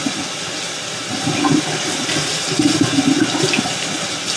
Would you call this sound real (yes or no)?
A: yes